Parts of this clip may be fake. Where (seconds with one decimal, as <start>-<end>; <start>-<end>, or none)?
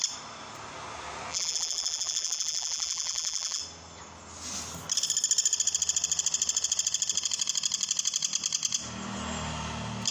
1.3-3.6